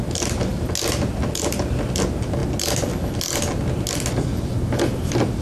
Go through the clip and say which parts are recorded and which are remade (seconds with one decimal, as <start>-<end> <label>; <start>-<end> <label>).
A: 0.0-5.4 recorded